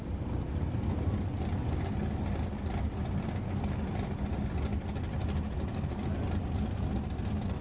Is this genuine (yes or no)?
yes